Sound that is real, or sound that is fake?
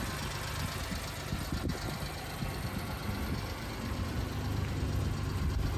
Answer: real